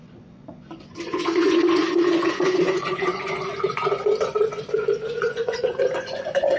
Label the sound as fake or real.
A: fake